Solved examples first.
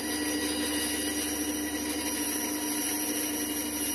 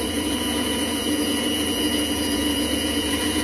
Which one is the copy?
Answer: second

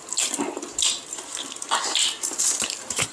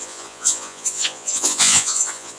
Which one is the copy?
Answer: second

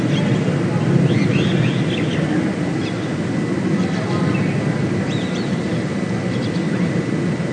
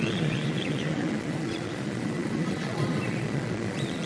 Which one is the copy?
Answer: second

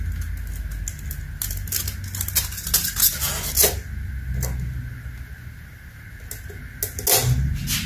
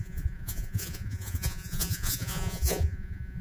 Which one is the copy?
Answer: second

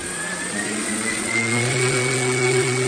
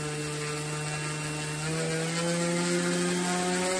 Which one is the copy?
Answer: first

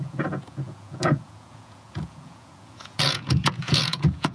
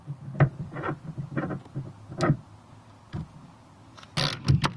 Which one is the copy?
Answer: first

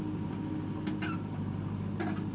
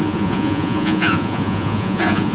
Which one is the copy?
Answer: second